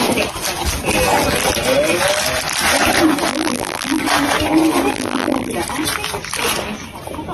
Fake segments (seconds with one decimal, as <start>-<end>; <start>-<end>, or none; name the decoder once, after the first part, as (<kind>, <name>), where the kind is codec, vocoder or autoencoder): 3.3-4.0 (vocoder, BigVGAN v2); 4.9-5.5